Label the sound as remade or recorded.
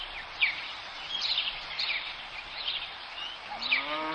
recorded